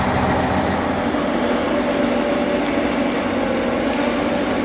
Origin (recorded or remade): recorded